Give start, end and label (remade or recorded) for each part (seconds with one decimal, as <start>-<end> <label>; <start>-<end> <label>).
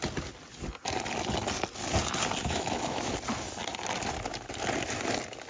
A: 0.0-2.4 recorded; 2.4-3.1 remade; 3.1-5.5 recorded